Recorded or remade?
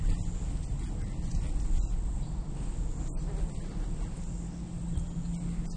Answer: recorded